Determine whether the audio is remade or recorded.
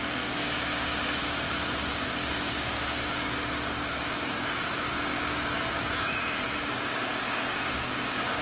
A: remade